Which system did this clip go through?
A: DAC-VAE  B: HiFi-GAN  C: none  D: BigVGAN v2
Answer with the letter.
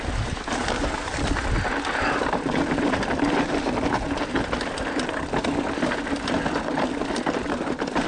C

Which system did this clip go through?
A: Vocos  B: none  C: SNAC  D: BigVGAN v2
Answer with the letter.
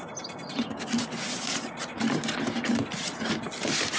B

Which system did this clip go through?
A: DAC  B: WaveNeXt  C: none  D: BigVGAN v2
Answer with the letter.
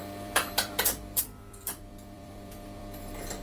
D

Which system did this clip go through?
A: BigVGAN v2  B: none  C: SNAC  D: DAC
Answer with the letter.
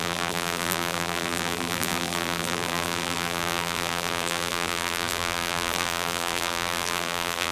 A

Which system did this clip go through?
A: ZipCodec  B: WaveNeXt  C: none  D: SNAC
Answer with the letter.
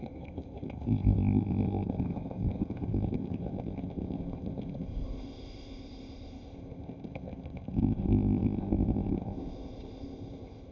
A